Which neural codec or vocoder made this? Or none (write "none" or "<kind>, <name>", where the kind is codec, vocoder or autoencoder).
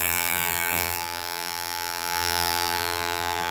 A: vocoder, BigVGAN v2